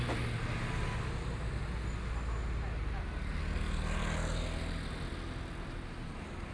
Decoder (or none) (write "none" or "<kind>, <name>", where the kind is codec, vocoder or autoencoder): none